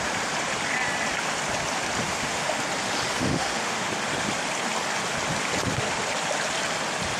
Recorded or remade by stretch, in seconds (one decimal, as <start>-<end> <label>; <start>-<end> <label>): 0.0-2.1 recorded; 2.1-2.6 remade; 2.6-3.1 recorded; 3.1-3.9 remade; 3.9-7.2 recorded